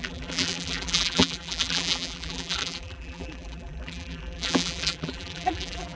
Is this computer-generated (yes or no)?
yes